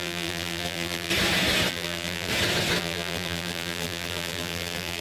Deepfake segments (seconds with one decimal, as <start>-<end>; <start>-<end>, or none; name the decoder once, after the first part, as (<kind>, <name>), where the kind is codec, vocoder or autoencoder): 0.0-1.1 (vocoder, BigVGAN v2); 1.7-2.3; 2.8-5.0